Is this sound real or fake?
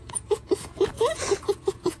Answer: fake